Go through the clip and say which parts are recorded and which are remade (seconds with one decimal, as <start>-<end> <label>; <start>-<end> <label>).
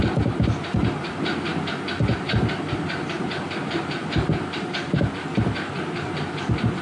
0.0-6.8 recorded